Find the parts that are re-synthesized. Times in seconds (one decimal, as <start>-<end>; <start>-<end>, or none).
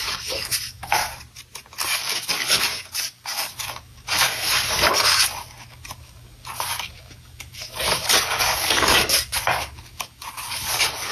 0.0-1.0; 2.0-11.1